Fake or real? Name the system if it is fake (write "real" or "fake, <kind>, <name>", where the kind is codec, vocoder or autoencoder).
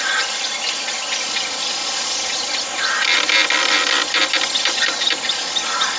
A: real